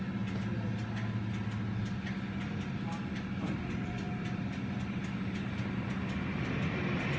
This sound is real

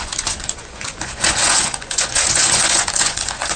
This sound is fake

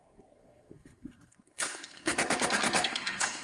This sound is fake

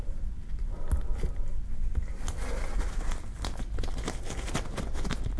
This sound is real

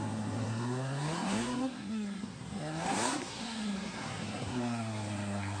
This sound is fake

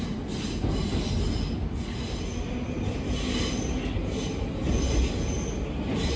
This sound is real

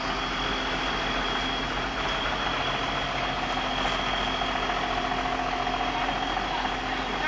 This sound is real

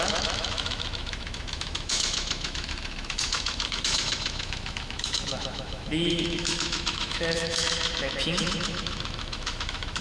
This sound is fake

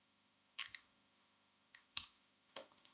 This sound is fake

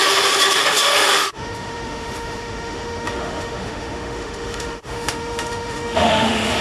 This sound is fake